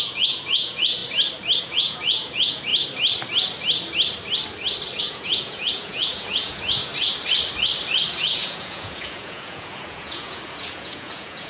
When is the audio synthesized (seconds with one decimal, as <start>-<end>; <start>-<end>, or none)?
0.0-1.0; 1.6-2.7; 5.0-6.9; 8.1-11.5